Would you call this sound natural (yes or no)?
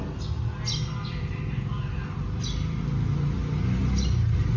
yes